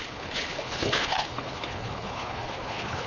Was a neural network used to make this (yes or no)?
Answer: yes